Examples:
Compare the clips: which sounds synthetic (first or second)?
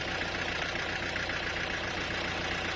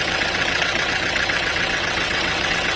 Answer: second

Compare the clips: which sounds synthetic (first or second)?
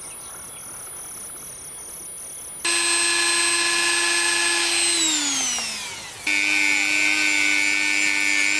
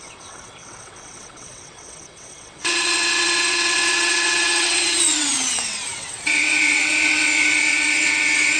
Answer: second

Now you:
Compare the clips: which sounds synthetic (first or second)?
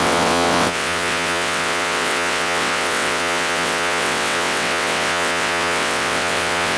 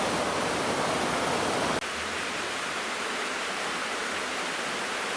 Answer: first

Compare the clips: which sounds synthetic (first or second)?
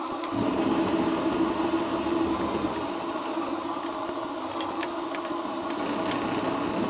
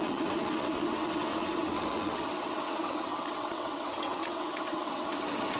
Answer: second